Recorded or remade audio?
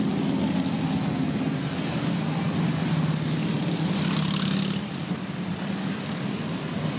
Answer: recorded